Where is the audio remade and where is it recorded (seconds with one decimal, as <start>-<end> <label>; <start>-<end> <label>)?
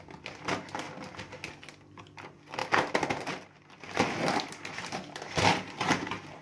0.0-6.4 recorded